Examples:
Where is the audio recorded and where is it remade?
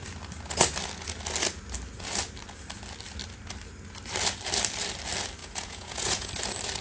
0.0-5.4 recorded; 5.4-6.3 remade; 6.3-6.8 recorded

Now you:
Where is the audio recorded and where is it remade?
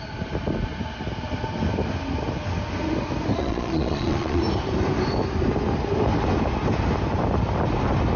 0.0-3.4 recorded; 3.4-4.4 remade; 4.4-8.2 recorded